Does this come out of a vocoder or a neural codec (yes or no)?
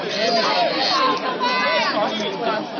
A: no